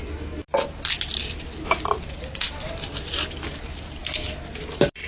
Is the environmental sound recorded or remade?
recorded